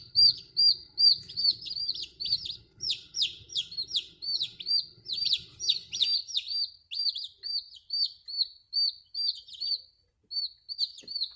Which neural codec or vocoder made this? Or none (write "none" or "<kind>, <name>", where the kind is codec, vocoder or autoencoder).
none